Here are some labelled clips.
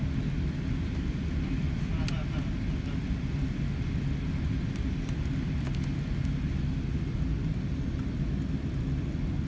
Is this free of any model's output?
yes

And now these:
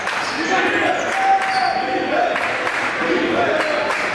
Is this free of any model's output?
yes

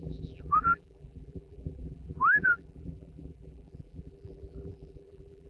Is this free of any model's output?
no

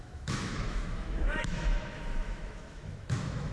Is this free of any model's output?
no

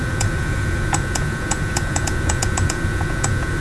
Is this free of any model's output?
no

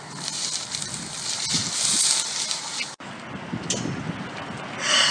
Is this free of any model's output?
yes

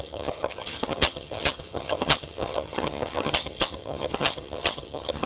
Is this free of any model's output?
no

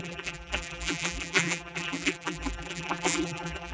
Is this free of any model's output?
no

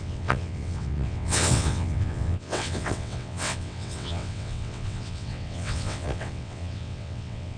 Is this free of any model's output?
no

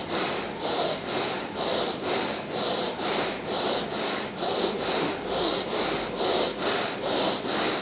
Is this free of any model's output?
yes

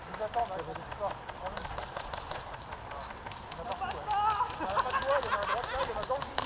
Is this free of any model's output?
yes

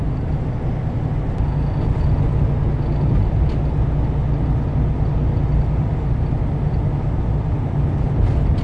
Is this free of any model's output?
yes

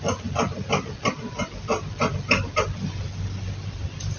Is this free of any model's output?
yes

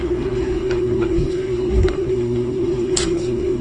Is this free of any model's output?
no